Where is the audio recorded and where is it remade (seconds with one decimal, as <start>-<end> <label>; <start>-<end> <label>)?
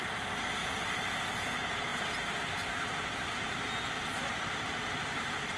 0.0-5.6 recorded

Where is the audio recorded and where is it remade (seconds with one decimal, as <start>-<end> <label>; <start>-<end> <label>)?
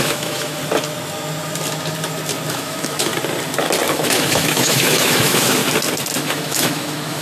0.0-0.6 remade; 0.6-2.5 recorded; 2.5-3.1 remade; 3.1-3.9 recorded; 3.9-5.6 remade; 5.6-6.2 recorded; 6.2-7.2 remade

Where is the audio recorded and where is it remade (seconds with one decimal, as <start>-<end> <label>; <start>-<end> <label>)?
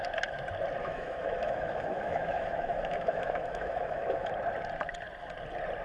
0.0-0.8 recorded; 0.8-4.3 remade; 4.3-5.8 recorded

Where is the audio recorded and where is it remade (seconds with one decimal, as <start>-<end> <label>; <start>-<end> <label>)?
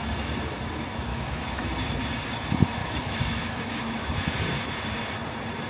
0.0-1.1 recorded; 1.1-1.7 remade; 1.7-2.8 recorded; 2.8-4.2 remade; 4.2-5.7 recorded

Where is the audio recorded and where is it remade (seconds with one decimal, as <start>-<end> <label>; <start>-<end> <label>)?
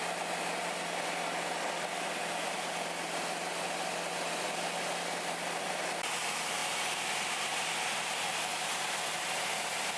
0.0-10.0 recorded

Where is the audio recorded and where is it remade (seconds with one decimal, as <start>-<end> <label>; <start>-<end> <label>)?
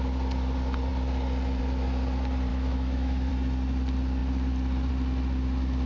0.0-2.5 recorded; 2.5-3.3 remade; 3.3-5.9 recorded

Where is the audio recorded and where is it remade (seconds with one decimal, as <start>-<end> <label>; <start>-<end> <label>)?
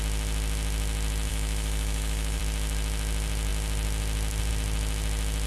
0.0-1.3 recorded; 1.3-2.4 remade; 2.4-5.5 recorded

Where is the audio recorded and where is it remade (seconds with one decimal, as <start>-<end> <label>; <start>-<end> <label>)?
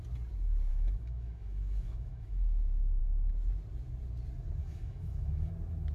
0.0-0.7 recorded; 0.7-2.6 remade; 2.6-4.6 recorded; 4.6-5.5 remade; 5.5-5.9 recorded